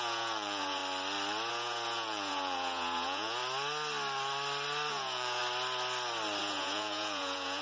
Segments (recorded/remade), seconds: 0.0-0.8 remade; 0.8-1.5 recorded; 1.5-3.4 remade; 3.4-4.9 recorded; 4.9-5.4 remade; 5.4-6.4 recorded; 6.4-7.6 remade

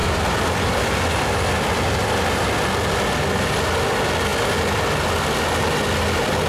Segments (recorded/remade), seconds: 0.0-1.1 remade; 1.1-6.5 recorded

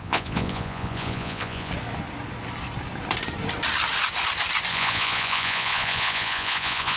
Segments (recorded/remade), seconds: 0.0-1.7 remade; 1.7-4.7 recorded; 4.7-7.0 remade

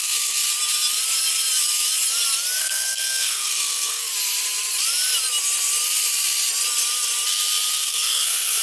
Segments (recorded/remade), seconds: 0.0-0.4 remade; 0.4-2.6 recorded; 2.6-4.1 remade; 4.1-7.7 recorded; 7.7-8.6 remade

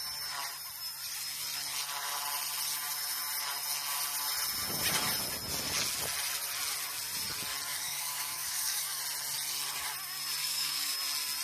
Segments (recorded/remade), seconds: 0.0-7.7 recorded; 7.7-9.0 remade; 9.0-10.4 recorded; 10.4-10.9 remade; 10.9-11.4 recorded

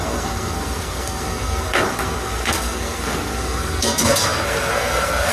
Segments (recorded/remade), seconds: 0.0-5.3 remade

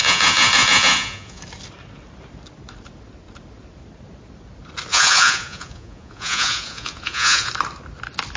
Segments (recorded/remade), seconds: 0.0-1.4 remade; 1.4-4.9 recorded; 4.9-7.5 remade; 7.5-8.4 recorded